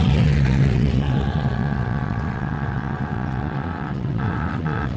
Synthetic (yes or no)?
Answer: yes